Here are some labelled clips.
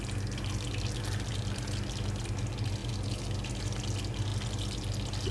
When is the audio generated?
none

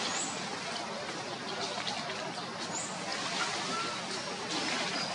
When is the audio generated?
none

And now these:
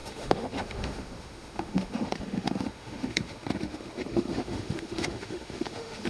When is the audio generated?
0.0-6.1 (autoencoder, DAC-VAE)